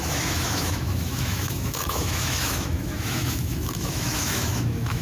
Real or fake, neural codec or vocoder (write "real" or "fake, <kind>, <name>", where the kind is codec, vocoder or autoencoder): fake, autoencoder, DAC-VAE